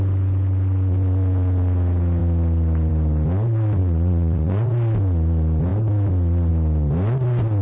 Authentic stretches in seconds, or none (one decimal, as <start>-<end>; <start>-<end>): 0.0-3.8; 4.7-7.6